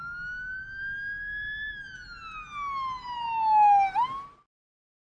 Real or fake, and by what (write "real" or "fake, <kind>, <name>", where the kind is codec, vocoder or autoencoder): real